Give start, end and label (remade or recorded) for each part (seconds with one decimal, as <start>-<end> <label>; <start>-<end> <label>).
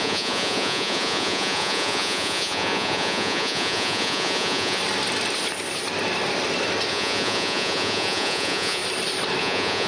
0.0-4.8 remade; 4.8-6.9 recorded; 6.9-8.8 remade; 8.8-9.4 recorded; 9.4-9.9 remade